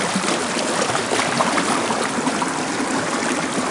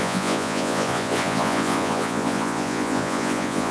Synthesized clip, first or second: second